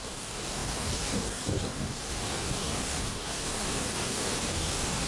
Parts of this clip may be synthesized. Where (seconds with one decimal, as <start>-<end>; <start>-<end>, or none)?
0.0-5.1